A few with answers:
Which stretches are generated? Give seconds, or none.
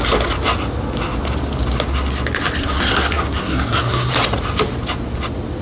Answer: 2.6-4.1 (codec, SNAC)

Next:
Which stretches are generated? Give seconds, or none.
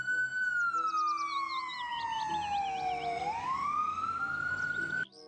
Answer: none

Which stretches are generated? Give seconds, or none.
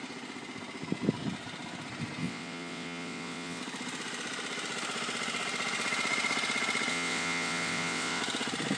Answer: 2.2-3.6 (vocoder, WaveNeXt); 6.9-8.2